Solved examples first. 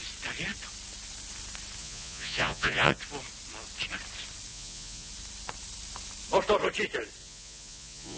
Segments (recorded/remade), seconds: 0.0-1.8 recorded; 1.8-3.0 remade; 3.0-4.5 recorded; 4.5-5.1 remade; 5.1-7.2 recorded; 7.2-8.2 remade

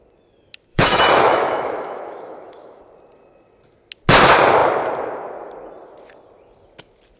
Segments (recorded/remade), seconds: 0.0-0.7 recorded; 0.7-2.8 remade; 2.8-7.2 recorded

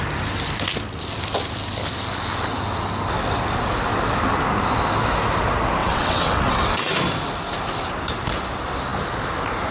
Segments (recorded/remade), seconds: 0.0-5.8 recorded; 5.8-6.9 remade; 6.9-9.7 recorded

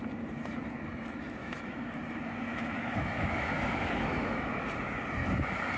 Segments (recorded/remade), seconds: 0.0-1.4 recorded; 1.4-2.0 remade; 2.0-2.5 recorded; 2.5-4.5 remade; 4.5-5.8 recorded

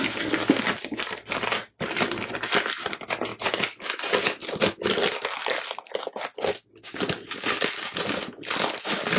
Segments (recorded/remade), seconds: 0.0-9.2 recorded

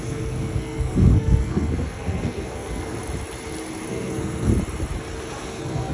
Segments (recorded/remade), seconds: 0.0-3.0 remade; 3.0-3.9 recorded; 3.9-4.5 remade; 4.5-5.4 recorded; 5.4-5.9 remade

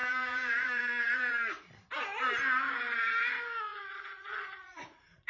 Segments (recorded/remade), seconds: 0.0-1.7 remade; 1.7-3.7 recorded; 3.7-5.3 remade